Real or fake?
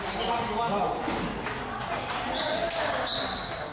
real